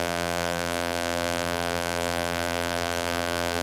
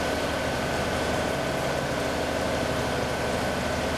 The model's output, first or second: first